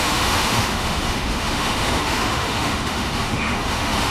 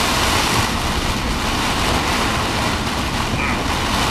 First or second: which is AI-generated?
first